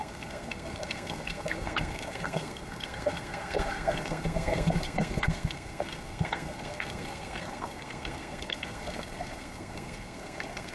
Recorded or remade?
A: remade